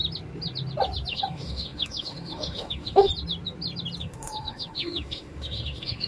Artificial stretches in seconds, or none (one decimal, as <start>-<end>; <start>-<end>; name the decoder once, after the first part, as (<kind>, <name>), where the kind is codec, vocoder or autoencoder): 1.1-3.1 (autoencoder, DAC-VAE); 4.0-6.1